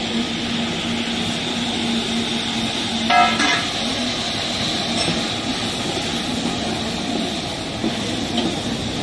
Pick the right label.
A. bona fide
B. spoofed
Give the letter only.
A